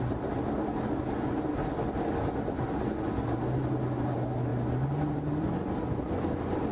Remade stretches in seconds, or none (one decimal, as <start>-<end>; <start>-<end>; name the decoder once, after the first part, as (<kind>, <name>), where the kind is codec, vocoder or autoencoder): none

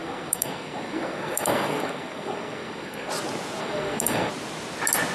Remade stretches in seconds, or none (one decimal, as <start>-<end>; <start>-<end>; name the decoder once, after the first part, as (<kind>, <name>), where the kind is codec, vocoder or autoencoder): 0.0-3.1 (codec, SNAC); 3.6-4.3

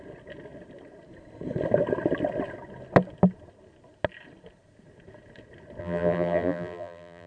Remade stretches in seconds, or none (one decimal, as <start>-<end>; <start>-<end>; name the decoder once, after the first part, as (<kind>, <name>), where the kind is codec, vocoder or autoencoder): 5.8-7.3 (vocoder, BigVGAN v2)

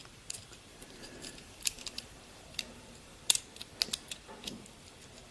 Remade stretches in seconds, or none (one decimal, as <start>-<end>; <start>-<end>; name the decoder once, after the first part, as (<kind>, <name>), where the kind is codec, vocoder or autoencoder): 0.7-3.4 (vocoder, BigVGAN v2)

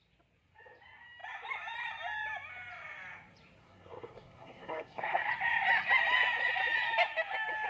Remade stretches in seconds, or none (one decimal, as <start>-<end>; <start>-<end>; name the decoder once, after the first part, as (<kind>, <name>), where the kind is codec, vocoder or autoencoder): 3.6-5.3 (codec, SNAC)

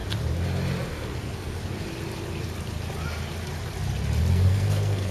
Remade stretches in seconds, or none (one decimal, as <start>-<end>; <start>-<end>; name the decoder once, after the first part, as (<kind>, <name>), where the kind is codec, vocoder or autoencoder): 0.9-1.6 (codec, SNAC); 4.3-5.1